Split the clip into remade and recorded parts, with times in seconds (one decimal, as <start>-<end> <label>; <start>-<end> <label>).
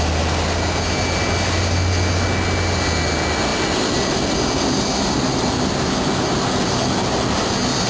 0.0-7.9 recorded